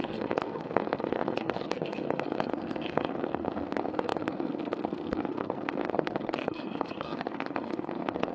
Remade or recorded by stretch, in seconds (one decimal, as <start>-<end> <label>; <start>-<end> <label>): 0.0-8.3 remade